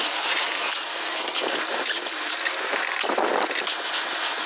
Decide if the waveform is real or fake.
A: real